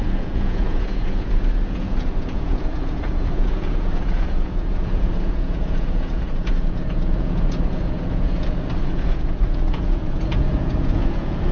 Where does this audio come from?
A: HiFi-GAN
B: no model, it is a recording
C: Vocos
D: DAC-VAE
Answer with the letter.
C